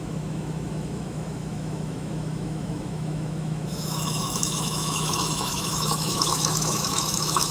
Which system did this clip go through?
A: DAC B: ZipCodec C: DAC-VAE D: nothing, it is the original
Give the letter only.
C